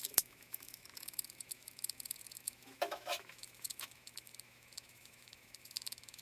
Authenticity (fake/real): fake